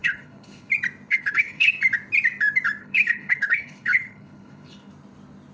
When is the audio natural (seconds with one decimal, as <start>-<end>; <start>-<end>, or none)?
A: 0.7-1.1; 1.7-2.8; 4.9-5.5